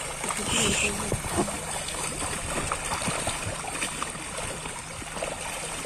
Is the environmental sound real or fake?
real